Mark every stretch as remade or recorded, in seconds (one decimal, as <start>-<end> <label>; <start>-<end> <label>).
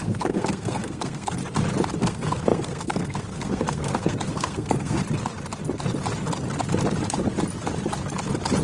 0.0-1.4 remade; 1.4-2.0 recorded; 2.0-5.0 remade; 5.0-8.6 recorded